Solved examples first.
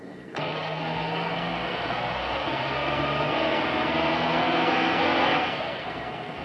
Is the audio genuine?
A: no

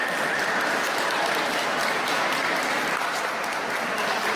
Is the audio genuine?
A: yes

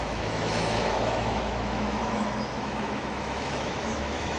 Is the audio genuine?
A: no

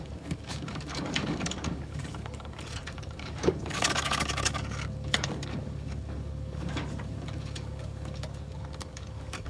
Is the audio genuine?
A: no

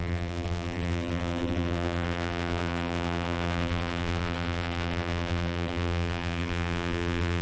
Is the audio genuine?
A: no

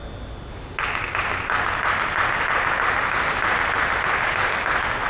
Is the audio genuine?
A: yes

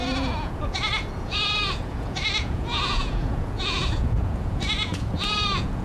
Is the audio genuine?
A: no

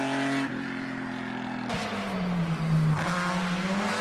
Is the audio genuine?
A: yes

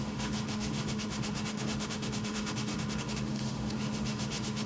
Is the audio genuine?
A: no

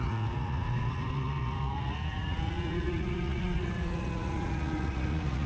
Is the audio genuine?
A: no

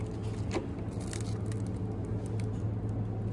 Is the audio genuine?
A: yes